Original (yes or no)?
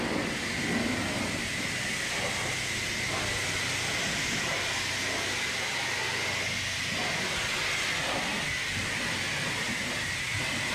yes